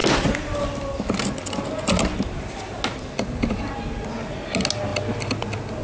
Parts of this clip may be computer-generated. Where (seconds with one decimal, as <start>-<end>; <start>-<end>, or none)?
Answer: none

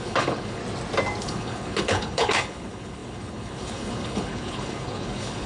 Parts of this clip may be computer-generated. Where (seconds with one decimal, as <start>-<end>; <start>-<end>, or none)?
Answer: 0.0-0.6; 1.2-5.5

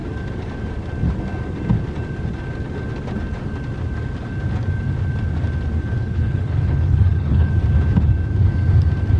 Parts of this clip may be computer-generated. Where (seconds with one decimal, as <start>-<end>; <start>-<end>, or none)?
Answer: 6.0-7.5

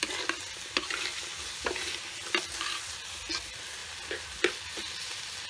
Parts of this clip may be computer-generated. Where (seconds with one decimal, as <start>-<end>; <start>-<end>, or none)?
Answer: none

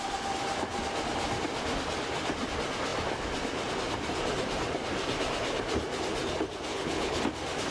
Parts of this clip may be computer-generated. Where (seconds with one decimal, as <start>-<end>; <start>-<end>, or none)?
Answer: 6.7-7.2

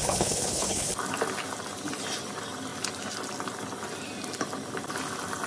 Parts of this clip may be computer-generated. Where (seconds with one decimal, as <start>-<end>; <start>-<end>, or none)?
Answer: 0.0-0.9